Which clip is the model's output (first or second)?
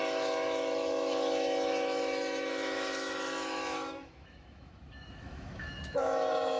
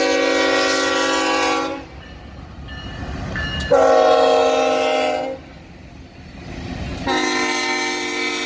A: first